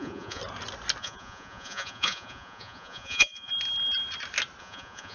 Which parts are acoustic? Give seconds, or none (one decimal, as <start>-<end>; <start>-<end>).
0.4-1.0; 3.5-4.6